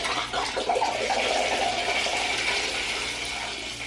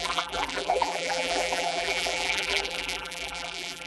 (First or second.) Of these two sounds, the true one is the first